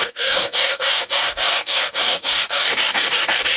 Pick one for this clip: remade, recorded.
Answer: remade